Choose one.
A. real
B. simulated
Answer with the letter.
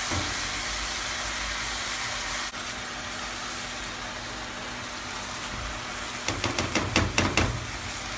A